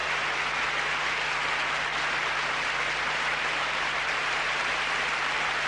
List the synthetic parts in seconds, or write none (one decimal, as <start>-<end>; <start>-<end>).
3.4-5.7